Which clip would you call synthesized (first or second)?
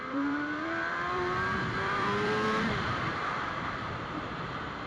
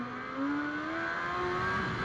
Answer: first